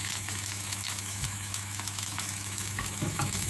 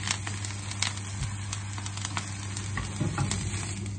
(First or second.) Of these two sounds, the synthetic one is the first